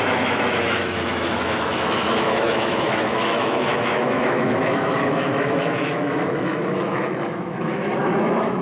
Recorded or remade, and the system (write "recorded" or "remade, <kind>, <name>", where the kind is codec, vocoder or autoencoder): remade, autoencoder, DAC-VAE